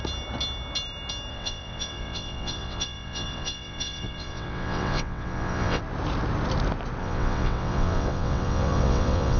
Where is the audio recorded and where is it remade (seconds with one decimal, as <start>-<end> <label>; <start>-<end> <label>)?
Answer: 0.0-1.3 recorded; 1.3-5.8 remade; 5.8-7.0 recorded; 7.0-9.4 remade